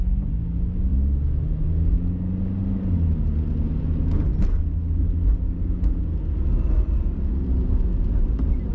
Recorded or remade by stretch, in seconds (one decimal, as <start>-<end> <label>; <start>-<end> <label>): 0.0-8.7 recorded